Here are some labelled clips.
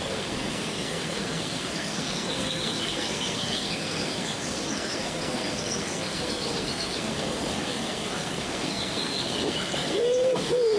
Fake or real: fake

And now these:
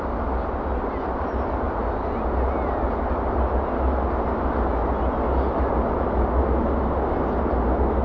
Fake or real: real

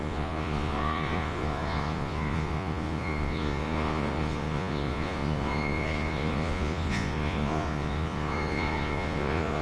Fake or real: fake